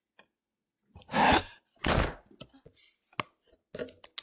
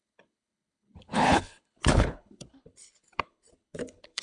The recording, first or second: first